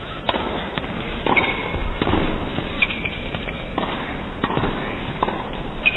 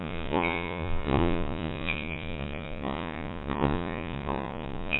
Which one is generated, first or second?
second